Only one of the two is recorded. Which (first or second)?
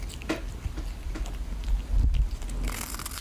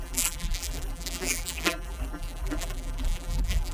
first